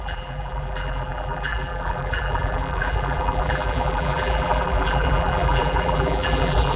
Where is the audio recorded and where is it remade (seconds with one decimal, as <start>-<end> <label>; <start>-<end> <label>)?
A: 0.0-6.8 remade